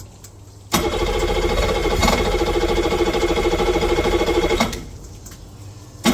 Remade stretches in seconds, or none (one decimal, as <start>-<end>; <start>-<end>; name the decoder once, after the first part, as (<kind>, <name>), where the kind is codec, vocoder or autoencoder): 1.8-5.1 (vocoder, BigVGAN v2)